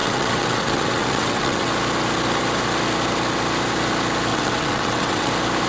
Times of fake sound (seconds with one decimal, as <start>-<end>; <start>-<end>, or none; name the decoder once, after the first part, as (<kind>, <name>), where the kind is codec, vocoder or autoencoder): 0.0-1.7 (vocoder, WaveNeXt); 4.3-5.3